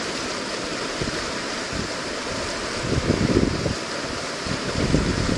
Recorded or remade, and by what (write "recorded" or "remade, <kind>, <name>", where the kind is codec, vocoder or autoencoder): remade, vocoder, BigVGAN v2